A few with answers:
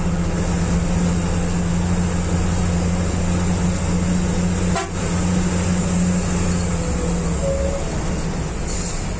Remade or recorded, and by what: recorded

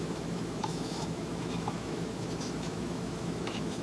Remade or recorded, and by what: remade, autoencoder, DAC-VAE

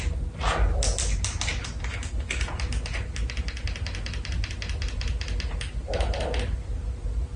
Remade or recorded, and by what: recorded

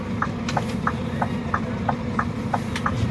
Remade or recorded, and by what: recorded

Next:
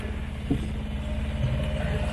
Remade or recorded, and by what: recorded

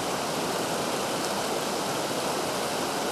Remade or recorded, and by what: recorded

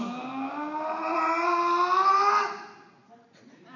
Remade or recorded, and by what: recorded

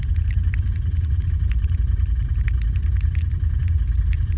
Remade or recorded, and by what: remade, vocoder, BigVGAN v2